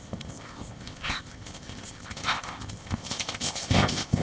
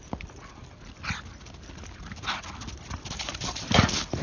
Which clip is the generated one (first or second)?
first